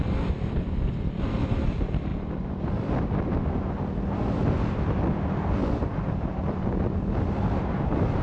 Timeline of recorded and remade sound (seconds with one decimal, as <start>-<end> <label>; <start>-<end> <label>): 0.0-8.2 recorded